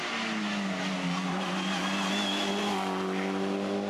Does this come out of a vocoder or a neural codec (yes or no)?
no